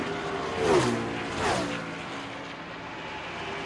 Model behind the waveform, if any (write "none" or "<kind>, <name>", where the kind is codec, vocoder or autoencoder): none